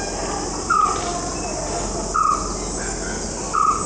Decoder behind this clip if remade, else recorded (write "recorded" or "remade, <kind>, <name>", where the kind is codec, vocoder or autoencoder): recorded